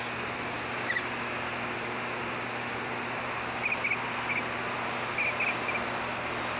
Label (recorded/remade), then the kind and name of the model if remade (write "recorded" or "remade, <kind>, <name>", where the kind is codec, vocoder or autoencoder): recorded